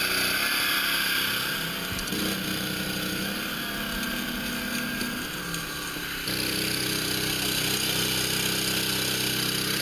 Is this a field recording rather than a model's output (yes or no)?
yes